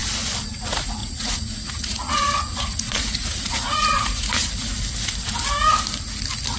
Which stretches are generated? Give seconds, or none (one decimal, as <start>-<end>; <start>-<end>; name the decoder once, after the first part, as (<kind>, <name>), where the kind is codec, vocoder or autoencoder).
1.0-4.5 (vocoder, Vocos)